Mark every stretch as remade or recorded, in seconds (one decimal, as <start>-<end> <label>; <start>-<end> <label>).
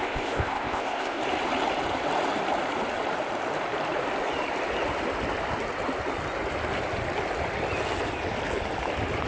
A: 0.0-1.2 remade; 1.2-9.3 recorded